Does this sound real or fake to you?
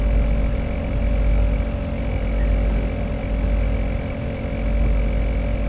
real